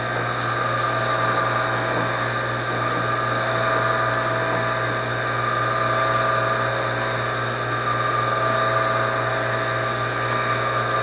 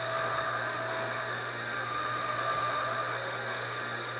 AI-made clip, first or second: second